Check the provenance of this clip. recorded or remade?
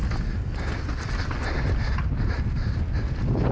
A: recorded